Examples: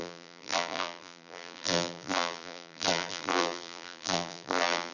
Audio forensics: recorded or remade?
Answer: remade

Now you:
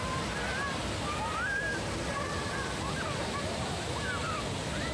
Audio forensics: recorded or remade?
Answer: recorded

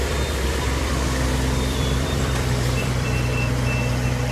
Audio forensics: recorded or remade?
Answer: remade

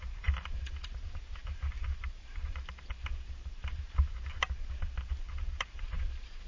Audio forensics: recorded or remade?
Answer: remade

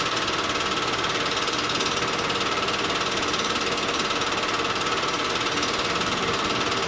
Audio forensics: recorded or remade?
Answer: remade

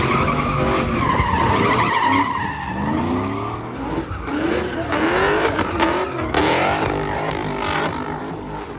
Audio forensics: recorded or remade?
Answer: recorded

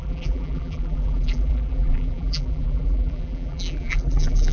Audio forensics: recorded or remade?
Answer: remade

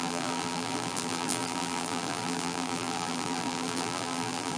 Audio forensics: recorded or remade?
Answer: remade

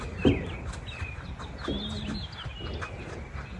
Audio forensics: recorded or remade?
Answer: recorded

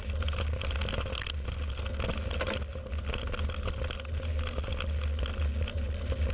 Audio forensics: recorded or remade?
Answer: recorded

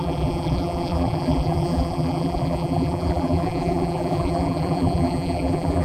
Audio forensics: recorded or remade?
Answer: remade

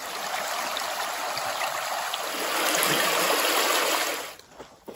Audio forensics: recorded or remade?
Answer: recorded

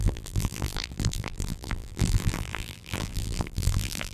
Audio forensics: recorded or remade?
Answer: remade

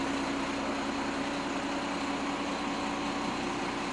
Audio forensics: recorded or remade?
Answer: recorded